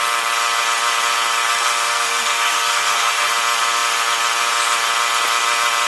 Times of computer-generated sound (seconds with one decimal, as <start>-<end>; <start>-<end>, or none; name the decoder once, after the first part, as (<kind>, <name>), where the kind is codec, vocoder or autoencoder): 1.5-3.3 (codec, SNAC)